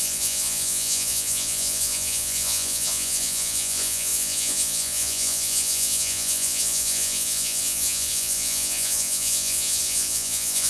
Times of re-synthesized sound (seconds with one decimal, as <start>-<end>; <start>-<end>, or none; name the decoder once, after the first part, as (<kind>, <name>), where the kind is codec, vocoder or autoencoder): 0.0-10.7 (vocoder, Vocos)